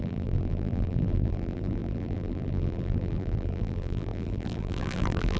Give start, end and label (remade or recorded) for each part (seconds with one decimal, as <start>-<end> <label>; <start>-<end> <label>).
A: 0.0-5.4 remade